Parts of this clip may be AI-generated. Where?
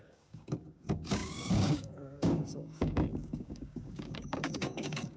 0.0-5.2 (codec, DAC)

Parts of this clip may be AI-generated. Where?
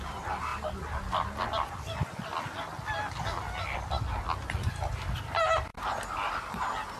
0.0-0.5 (vocoder, BigVGAN v2); 4.7-7.0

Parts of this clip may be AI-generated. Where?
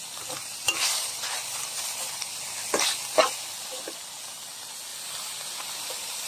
none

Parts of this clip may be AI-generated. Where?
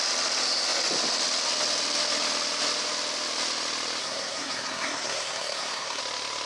4.0-6.0 (codec, SNAC)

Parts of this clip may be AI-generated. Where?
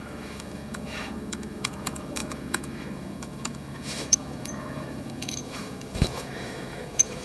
0.0-7.2 (autoencoder, DAC-VAE)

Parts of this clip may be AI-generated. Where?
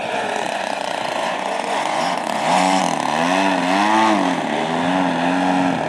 0.0-2.8 (vocoder, Vocos)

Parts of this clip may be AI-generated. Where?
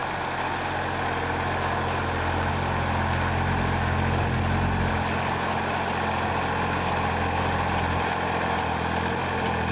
none